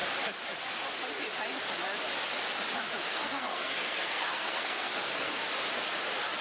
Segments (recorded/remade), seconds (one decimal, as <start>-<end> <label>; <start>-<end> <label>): 0.0-3.1 recorded; 3.1-5.3 remade; 5.3-6.4 recorded